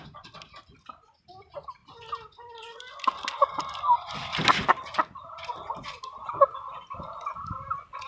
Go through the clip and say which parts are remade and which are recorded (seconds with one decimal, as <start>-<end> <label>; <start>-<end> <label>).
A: 0.0-8.1 recorded